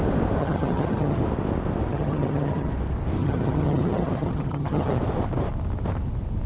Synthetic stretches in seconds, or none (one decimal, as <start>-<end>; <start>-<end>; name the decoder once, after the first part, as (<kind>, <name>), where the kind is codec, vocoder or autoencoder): 0.4-1.2 (vocoder, HiFi-GAN); 1.9-2.7; 3.2-5.0